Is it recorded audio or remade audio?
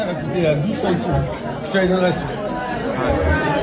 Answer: recorded